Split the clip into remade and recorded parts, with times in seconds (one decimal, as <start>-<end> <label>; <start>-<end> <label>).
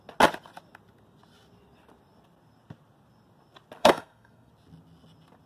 0.0-3.8 recorded; 3.8-4.5 remade; 4.5-5.5 recorded